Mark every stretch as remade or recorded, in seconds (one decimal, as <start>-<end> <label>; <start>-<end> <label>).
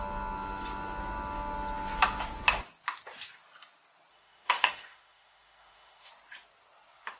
0.0-4.1 recorded; 4.1-6.1 remade; 6.1-7.2 recorded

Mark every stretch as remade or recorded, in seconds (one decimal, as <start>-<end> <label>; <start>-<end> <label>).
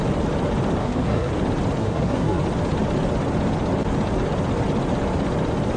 0.0-0.8 recorded; 0.8-1.3 remade; 1.3-1.8 recorded; 1.8-2.4 remade; 2.4-5.8 recorded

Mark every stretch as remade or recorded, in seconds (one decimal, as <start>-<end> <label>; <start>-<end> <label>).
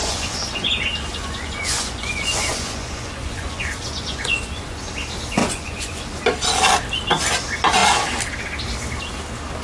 0.0-0.7 remade; 0.7-1.1 recorded; 1.1-4.9 remade; 4.9-5.4 recorded; 5.4-6.0 remade; 6.0-9.6 recorded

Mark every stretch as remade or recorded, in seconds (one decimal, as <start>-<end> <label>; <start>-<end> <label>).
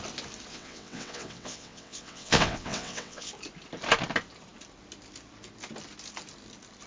0.0-0.5 recorded; 0.5-3.3 remade; 3.3-6.9 recorded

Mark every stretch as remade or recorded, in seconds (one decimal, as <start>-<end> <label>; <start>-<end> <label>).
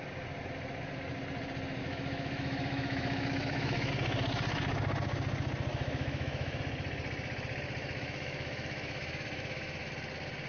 0.0-1.8 recorded; 1.8-3.9 remade; 3.9-5.7 recorded; 5.7-6.6 remade; 6.6-7.8 recorded; 7.8-9.9 remade; 9.9-10.5 recorded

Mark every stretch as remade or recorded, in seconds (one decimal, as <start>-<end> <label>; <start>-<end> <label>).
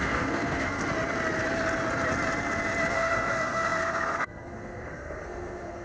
0.0-0.8 remade; 0.8-2.9 recorded; 2.9-5.8 remade